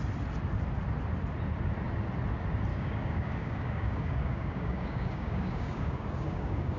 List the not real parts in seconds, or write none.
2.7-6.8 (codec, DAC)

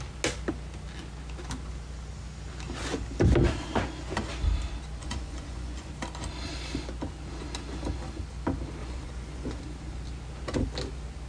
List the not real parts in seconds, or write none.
5.0-5.9 (vocoder, Vocos); 8.8-9.6

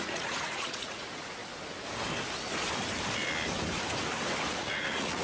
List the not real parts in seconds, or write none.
0.0-1.4 (vocoder, Vocos); 4.5-5.2

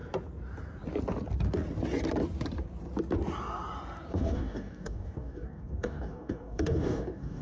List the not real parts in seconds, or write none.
4.1-7.4 (codec, DAC)

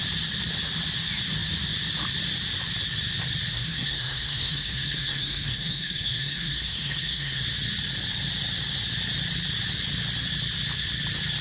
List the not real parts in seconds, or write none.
3.5-7.4 (codec, SNAC)

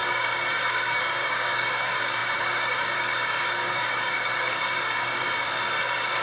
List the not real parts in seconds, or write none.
0.0-6.2 (codec, DAC)

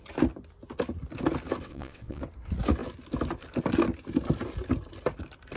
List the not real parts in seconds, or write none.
1.6-2.2 (vocoder, WaveNeXt)

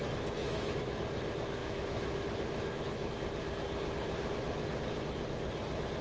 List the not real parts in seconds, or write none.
0.4-1.0 (autoencoder, DAC-VAE); 1.6-3.1